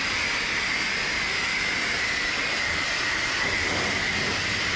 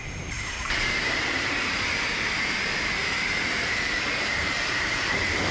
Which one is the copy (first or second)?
second